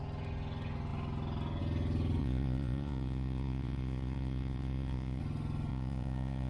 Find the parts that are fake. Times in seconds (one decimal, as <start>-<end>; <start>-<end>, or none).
2.2-5.2; 5.7-6.5